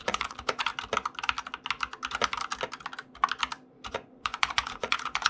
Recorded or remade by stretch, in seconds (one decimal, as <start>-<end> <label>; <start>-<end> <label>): 0.0-0.7 remade; 0.7-3.9 recorded; 3.9-5.3 remade

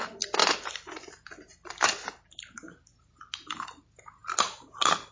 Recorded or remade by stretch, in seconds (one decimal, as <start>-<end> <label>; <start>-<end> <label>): 0.0-5.1 recorded

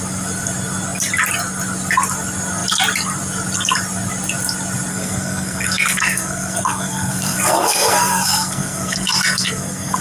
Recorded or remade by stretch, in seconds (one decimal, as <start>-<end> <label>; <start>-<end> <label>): 0.0-4.9 recorded; 4.9-10.0 remade

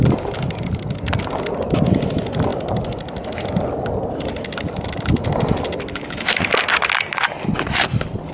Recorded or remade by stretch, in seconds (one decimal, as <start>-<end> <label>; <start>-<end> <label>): 0.0-8.3 recorded

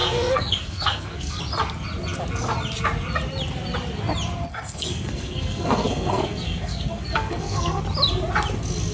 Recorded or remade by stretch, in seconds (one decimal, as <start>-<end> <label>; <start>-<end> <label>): 0.0-1.4 remade; 1.4-4.5 recorded; 4.5-7.8 remade; 7.8-8.9 recorded

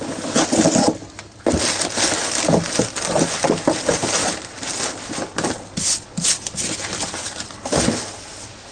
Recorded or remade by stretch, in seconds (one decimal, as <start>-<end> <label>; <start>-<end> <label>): 0.0-8.7 recorded